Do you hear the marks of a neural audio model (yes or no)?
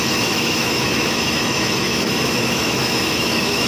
yes